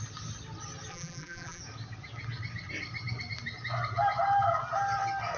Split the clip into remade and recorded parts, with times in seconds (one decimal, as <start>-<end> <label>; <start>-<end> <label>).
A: 0.0-0.9 recorded; 0.9-1.6 remade; 1.6-5.4 recorded